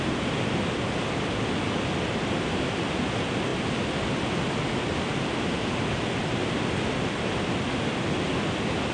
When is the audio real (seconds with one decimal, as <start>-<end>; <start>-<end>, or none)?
0.0-8.9